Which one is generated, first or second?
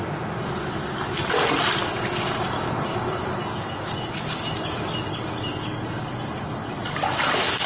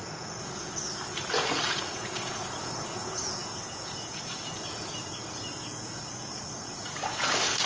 second